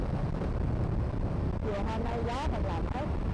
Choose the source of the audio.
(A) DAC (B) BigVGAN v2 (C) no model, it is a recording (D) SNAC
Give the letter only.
C